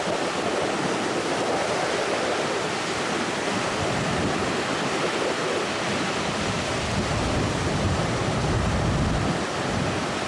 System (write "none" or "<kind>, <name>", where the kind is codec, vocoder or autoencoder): none